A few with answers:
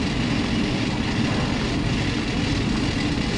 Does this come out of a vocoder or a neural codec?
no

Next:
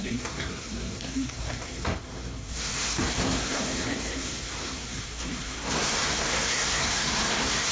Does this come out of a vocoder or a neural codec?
yes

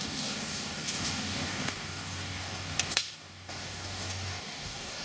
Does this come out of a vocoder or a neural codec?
yes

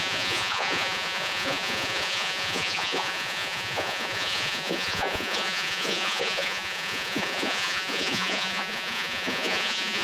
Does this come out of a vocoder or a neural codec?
yes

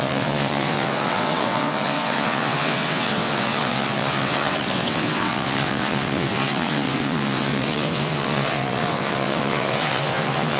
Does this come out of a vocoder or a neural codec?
yes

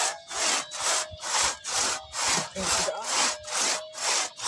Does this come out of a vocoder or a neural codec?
no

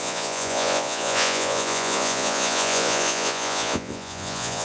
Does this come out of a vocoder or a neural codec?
yes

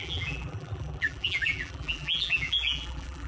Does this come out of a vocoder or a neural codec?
yes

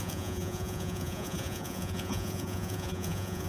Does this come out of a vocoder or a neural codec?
yes